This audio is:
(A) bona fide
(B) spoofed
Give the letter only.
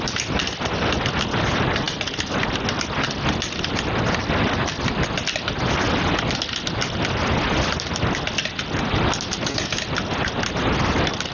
A